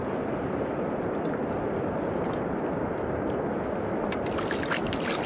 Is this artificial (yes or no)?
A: no